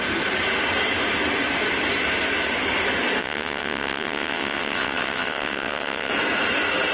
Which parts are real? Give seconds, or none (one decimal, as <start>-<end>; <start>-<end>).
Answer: 0.0-3.2; 6.1-6.9